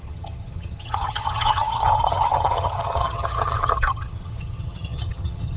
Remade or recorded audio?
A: remade